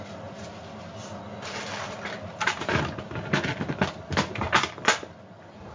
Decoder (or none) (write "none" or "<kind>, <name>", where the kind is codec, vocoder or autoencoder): vocoder, BigVGAN v2